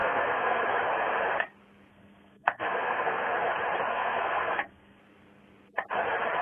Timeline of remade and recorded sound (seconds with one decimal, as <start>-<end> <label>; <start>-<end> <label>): 0.0-0.6 remade; 0.6-1.9 recorded; 1.9-3.3 remade; 3.3-3.9 recorded; 3.9-5.0 remade; 5.0-6.4 recorded